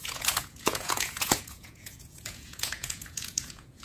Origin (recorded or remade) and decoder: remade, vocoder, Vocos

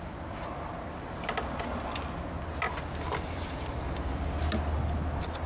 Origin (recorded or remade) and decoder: recorded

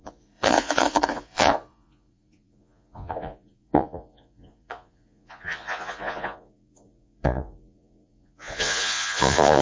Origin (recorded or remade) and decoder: remade, vocoder, Vocos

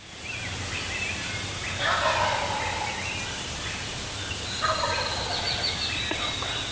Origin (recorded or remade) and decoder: recorded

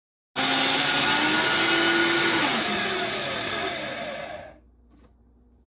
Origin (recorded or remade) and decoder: recorded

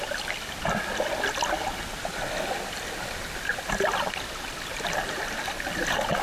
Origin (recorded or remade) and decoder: recorded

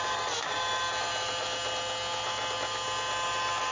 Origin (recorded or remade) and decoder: recorded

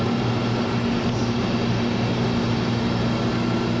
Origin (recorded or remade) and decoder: recorded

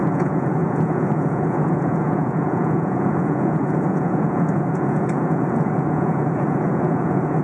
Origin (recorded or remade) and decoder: remade, vocoder, Vocos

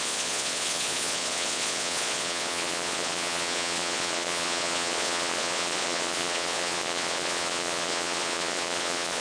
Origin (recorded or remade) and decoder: remade, vocoder, Vocos